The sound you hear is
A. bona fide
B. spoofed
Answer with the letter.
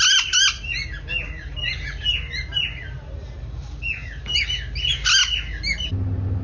A